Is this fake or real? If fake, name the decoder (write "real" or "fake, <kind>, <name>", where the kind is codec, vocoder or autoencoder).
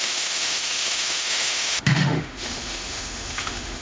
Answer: fake, autoencoder, DAC-VAE